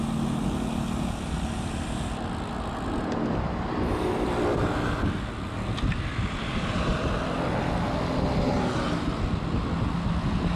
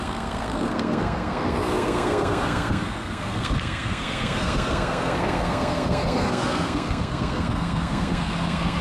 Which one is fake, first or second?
second